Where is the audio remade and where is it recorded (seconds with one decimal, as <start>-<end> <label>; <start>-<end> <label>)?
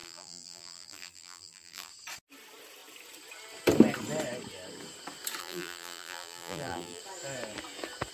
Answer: 0.0-1.9 remade; 1.9-5.4 recorded; 5.4-7.0 remade; 7.0-8.1 recorded